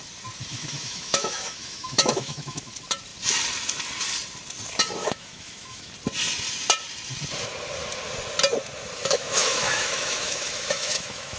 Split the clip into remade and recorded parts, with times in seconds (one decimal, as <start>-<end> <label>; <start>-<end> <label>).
0.0-0.5 recorded; 0.5-2.7 remade; 2.7-5.0 recorded; 5.0-5.9 remade; 5.9-9.0 recorded; 9.0-11.4 remade